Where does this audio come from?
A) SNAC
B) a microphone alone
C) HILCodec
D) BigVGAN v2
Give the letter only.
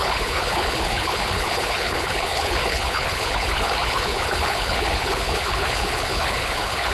C